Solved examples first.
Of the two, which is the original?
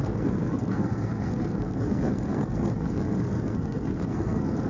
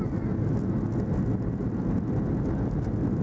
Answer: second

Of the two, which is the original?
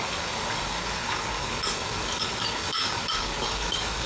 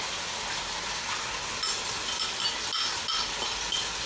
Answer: second